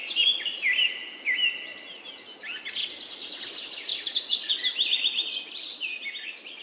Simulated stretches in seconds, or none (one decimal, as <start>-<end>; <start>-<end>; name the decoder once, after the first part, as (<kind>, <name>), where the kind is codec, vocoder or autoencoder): 3.9-4.5 (vocoder, Vocos)